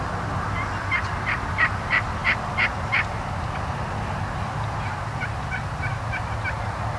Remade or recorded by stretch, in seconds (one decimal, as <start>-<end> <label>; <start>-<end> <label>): 0.0-7.0 recorded